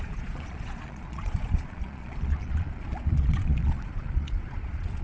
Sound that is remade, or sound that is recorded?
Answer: remade